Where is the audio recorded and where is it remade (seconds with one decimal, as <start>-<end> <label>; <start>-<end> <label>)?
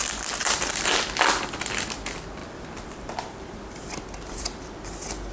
0.0-2.4 recorded; 2.4-4.0 remade; 4.0-5.3 recorded